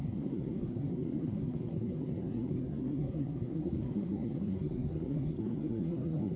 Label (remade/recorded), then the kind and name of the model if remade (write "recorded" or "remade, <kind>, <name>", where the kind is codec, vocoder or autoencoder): remade, codec, SNAC